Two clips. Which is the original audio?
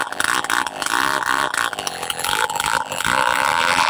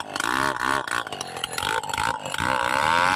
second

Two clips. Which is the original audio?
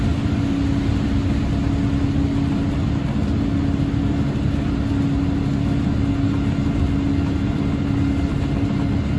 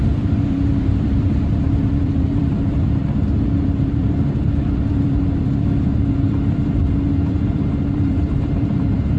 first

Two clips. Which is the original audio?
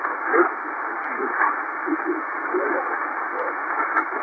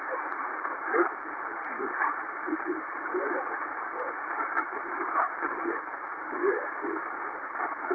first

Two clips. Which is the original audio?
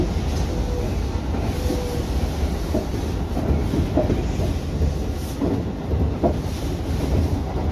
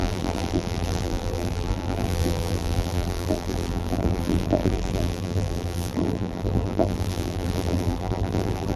first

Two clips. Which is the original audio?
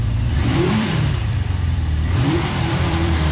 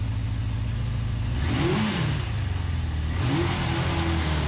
second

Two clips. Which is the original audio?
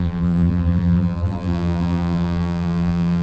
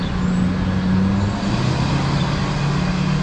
second